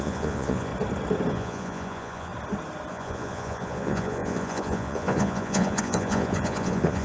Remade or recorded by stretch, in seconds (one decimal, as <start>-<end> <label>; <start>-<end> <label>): 0.0-0.7 remade; 0.7-1.3 recorded; 1.3-2.3 remade; 2.3-2.9 recorded; 2.9-7.0 remade

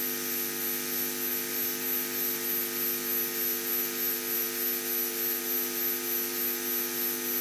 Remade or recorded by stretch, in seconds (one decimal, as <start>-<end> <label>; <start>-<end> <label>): 0.0-7.4 recorded

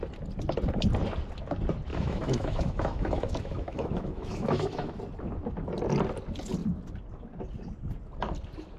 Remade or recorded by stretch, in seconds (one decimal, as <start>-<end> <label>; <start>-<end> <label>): 0.0-1.9 recorded; 1.9-5.0 remade; 5.0-8.8 recorded

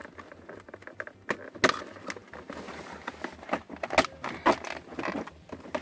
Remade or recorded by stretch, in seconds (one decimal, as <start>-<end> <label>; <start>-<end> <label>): 0.0-5.8 recorded

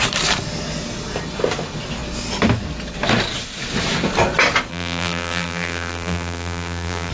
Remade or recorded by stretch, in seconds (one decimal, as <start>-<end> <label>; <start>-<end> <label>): 0.0-4.7 recorded; 4.7-7.1 remade

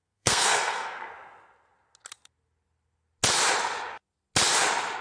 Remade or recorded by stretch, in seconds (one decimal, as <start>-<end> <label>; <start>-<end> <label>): 0.0-1.1 remade; 1.1-5.0 recorded

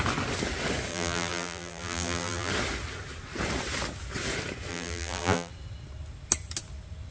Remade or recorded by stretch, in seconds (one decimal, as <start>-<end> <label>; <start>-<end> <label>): 0.0-0.9 recorded; 0.9-2.5 remade; 2.5-4.7 recorded; 4.7-5.5 remade; 5.5-7.1 recorded